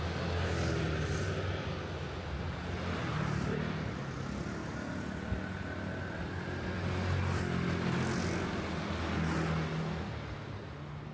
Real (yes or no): yes